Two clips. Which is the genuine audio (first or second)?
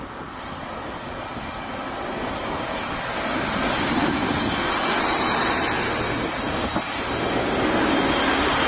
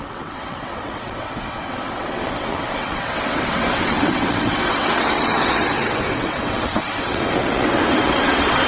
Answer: first